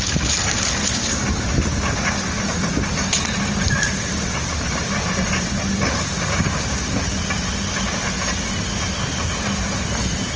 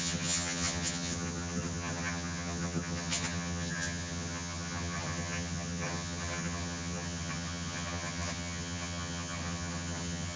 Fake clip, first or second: second